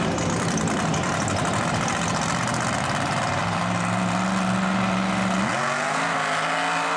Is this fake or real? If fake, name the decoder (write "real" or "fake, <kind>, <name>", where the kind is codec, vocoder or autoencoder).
real